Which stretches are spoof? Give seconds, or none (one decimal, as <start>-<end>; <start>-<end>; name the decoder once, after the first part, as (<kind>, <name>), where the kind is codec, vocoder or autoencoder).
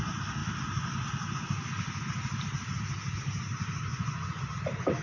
3.9-4.4 (vocoder, Vocos)